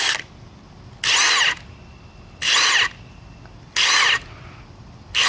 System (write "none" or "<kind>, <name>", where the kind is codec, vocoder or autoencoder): none